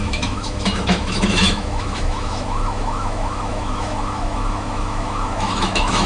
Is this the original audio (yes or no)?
no